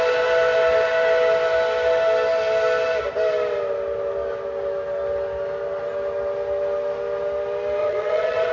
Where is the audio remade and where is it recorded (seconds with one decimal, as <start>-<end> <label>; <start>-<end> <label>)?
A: 0.0-7.8 recorded; 7.8-8.5 remade